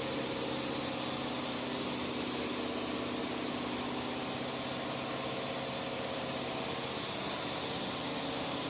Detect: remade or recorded recorded